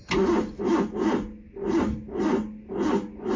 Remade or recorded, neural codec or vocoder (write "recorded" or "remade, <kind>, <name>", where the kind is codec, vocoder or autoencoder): recorded